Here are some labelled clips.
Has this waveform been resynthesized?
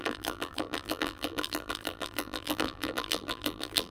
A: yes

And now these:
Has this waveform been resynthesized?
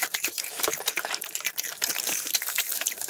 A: yes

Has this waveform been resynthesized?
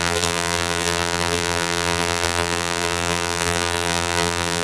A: yes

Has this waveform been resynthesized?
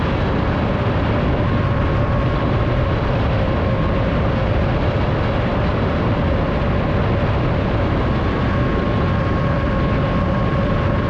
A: no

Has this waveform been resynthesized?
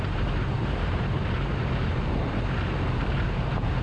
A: yes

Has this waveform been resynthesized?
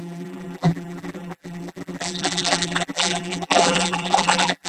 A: yes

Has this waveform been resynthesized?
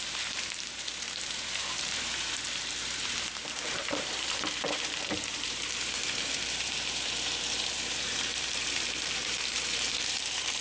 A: yes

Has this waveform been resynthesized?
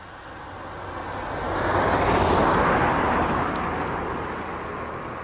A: no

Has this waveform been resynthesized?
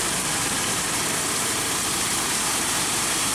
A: yes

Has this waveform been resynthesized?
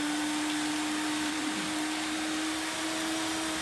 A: yes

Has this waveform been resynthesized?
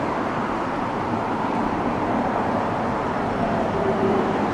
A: yes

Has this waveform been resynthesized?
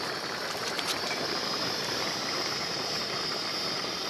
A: yes